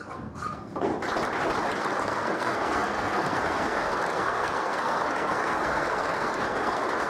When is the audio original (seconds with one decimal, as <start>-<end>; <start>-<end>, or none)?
0.9-1.8